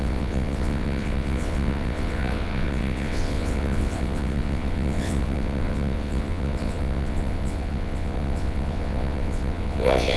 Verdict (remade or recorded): remade